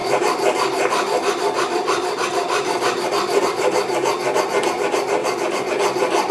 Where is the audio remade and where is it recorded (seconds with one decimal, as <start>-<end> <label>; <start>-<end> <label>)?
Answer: 0.0-3.4 remade; 3.4-5.2 recorded; 5.2-5.7 remade; 5.7-6.3 recorded